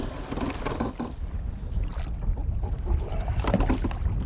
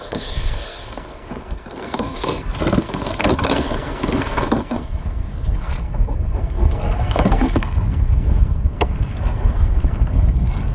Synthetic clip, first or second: second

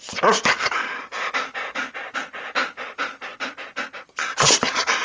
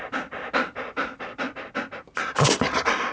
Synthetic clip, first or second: first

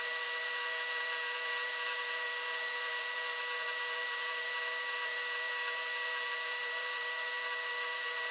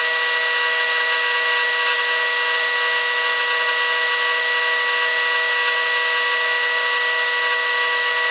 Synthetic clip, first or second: first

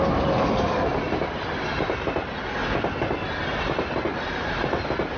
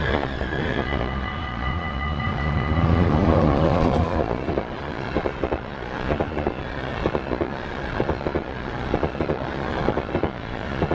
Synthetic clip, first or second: second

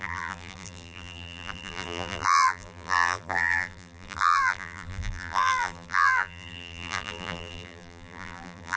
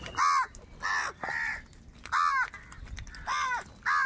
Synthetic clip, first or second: first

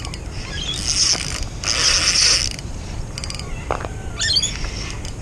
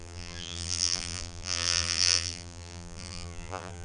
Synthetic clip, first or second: second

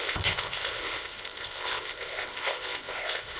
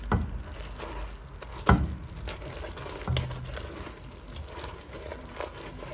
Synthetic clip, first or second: first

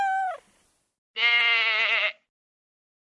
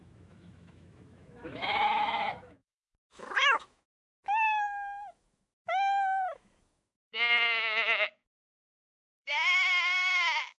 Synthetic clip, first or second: second